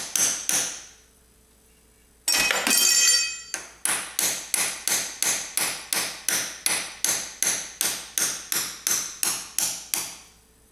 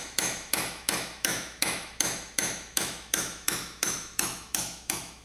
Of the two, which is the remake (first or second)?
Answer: second